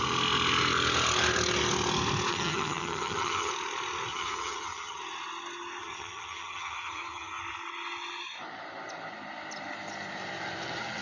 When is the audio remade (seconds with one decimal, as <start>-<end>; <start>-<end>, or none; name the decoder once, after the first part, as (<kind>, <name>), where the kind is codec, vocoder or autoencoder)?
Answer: 2.3-3.5 (vocoder, HiFi-GAN); 4.1-5.0; 5.8-7.4